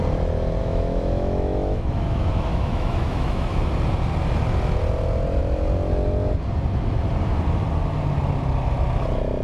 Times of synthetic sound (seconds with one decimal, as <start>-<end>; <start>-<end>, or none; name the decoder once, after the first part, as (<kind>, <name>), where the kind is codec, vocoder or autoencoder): 0.6-3.6 (autoencoder, DAC-VAE)